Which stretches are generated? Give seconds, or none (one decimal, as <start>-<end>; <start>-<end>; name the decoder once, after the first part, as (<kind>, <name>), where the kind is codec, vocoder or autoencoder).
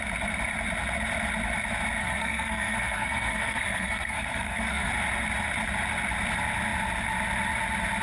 2.0-4.9 (codec, SNAC)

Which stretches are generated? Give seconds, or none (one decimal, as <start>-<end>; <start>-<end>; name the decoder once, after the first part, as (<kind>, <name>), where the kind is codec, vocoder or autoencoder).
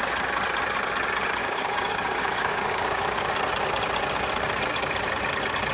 1.4-3.3 (codec, DAC)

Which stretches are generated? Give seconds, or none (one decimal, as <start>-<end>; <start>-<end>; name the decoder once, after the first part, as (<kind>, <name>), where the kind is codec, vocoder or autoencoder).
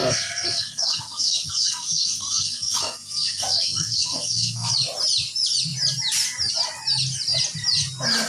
0.0-4.7 (codec, SNAC)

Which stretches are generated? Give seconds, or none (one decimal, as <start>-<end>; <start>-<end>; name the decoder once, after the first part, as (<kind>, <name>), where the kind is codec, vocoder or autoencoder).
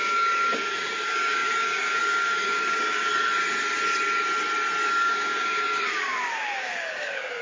0.0-3.1 (codec, DAC); 4.9-7.4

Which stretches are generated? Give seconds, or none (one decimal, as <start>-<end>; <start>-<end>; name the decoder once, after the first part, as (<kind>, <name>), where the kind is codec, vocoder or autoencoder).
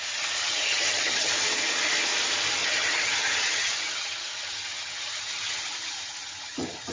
0.4-1.3 (vocoder, HiFi-GAN); 2.6-6.9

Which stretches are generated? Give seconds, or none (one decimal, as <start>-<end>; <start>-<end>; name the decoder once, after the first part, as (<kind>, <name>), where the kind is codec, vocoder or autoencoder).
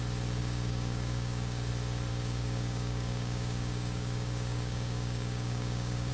0.4-1.7 (codec, DAC); 2.1-6.1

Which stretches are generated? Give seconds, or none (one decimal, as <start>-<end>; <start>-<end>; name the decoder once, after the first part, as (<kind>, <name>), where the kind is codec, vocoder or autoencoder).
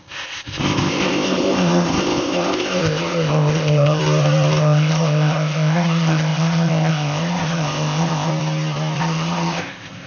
0.0-4.0 (codec, ZipCodec); 4.6-8.3; 9.0-10.1